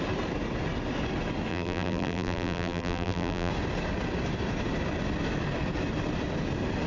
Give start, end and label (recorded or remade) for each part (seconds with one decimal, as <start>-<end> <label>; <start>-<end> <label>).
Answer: 0.0-1.5 recorded; 1.5-3.5 remade; 3.5-6.9 recorded